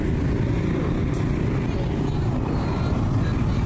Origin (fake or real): real